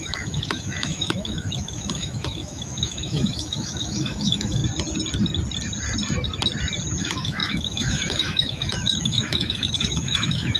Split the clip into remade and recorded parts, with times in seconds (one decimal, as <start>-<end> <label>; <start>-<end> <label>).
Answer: 0.0-4.6 remade; 4.6-7.0 recorded; 7.0-10.6 remade